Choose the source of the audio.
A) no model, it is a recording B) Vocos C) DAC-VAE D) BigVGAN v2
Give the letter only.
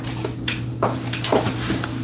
A